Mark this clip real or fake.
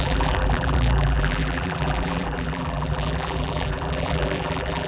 fake